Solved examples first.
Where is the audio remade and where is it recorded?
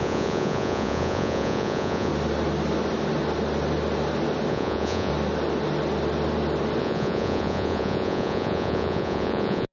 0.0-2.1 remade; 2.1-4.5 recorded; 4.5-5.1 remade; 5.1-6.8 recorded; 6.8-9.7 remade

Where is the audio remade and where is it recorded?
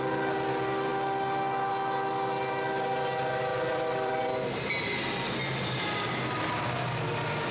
0.0-3.5 recorded; 3.5-4.2 remade; 4.2-7.5 recorded